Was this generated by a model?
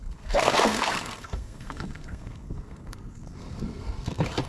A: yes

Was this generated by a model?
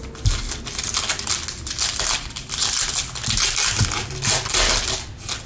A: no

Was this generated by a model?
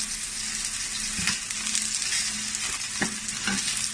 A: no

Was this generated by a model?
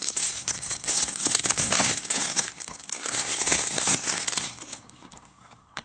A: yes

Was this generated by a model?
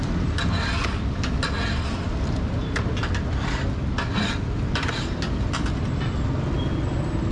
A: no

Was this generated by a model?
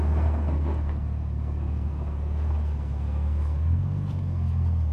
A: yes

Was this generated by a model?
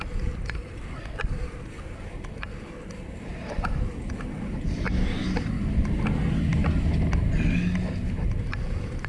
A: no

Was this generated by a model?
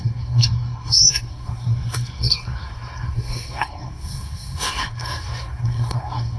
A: yes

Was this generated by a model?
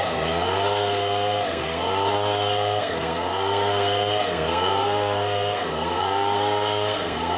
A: yes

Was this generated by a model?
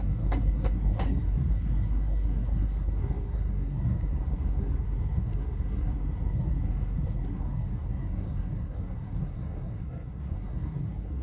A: yes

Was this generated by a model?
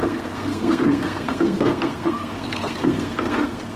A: yes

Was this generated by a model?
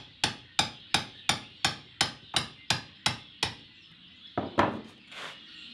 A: no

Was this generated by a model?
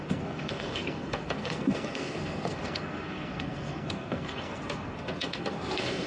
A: yes